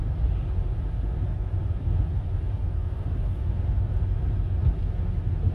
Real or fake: real